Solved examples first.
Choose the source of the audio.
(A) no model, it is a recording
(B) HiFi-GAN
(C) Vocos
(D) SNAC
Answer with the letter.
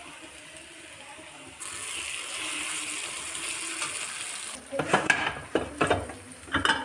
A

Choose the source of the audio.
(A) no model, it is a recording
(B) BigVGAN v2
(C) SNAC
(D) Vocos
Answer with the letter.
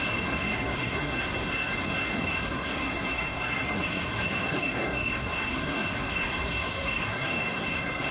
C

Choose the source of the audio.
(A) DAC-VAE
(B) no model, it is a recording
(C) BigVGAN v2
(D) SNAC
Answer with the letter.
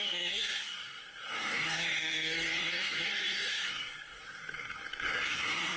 D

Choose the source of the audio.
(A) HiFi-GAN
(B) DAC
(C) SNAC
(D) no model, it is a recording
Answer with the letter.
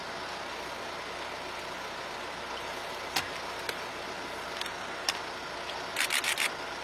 D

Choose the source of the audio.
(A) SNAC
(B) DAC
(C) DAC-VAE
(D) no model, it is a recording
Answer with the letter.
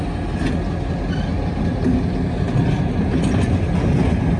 D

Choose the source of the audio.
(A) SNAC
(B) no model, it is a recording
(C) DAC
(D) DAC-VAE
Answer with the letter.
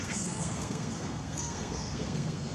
A